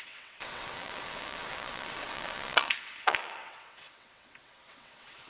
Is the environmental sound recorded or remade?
remade